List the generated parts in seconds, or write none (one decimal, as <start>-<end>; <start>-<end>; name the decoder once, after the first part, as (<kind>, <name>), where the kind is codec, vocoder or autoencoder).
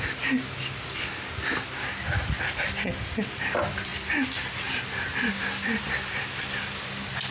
none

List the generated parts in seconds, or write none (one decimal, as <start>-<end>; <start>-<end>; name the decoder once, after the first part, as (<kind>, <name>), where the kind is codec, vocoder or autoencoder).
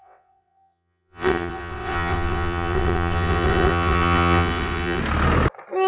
0.0-5.0 (vocoder, WaveNeXt)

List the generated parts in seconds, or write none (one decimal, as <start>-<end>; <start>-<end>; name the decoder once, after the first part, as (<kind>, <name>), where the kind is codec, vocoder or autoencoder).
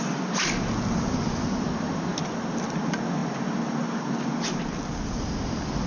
none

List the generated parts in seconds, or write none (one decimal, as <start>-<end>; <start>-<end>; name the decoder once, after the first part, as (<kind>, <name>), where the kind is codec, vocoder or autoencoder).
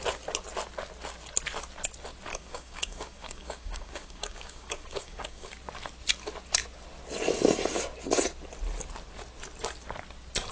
2.3-5.5 (codec, DAC)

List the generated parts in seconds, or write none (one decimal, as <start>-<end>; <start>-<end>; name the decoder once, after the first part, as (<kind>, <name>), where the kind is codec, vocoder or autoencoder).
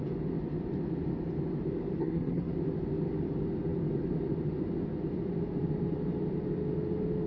2.0-2.5 (codec, SNAC)